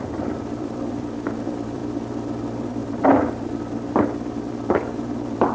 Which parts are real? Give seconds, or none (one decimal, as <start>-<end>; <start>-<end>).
1.8-2.4